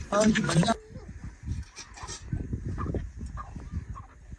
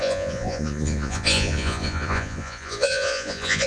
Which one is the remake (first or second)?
second